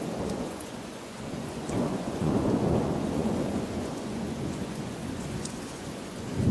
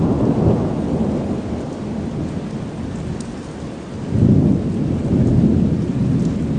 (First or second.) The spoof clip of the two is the first